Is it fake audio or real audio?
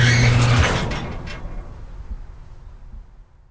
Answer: real